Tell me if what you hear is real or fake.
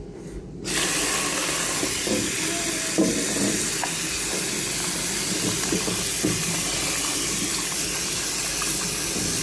real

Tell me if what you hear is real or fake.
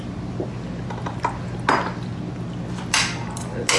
real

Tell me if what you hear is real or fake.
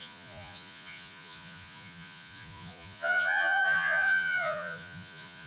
fake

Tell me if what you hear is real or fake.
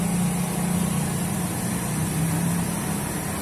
real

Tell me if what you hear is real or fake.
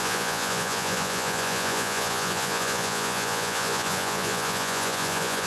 fake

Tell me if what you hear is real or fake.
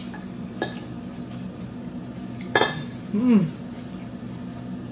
real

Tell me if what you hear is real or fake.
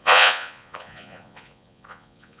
fake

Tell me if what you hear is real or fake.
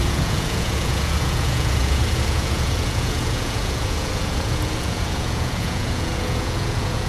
fake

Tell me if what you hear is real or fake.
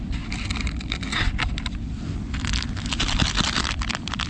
real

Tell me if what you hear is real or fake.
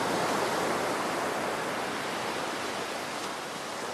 real